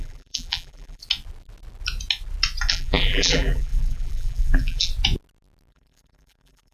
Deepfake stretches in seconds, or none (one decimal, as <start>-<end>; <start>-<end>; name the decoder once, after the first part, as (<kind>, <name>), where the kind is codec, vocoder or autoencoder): 0.0-1.0 (vocoder, BigVGAN v2); 2.7-4.9; 5.7-6.7